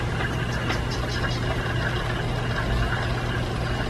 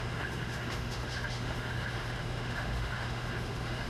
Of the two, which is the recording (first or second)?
first